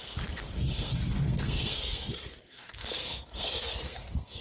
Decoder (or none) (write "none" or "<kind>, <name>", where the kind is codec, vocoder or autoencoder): codec, SNAC